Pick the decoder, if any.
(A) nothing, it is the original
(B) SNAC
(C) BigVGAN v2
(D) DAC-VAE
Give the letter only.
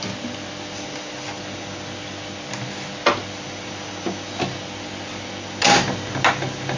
A